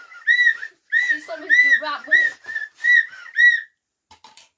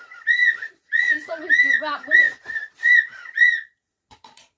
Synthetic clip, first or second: second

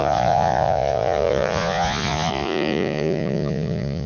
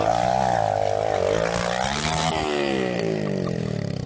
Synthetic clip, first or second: first